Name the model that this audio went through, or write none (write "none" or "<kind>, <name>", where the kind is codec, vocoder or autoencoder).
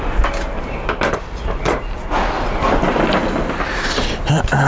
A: none